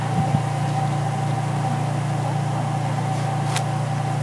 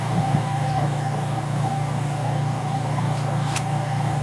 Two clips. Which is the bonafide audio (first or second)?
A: first